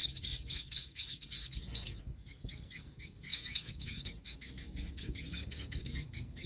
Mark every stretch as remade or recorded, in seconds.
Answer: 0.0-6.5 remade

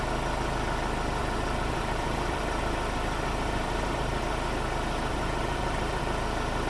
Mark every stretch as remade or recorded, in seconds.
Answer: 0.0-1.2 recorded; 1.2-4.2 remade; 4.2-5.1 recorded; 5.1-6.0 remade; 6.0-6.7 recorded